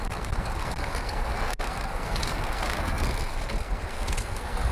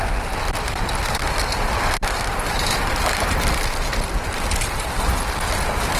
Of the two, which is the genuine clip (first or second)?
second